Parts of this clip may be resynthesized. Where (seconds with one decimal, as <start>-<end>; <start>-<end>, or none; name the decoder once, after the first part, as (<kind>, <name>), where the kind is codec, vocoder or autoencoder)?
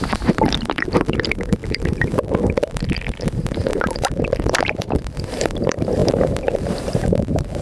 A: 0.0-7.6 (vocoder, BigVGAN v2)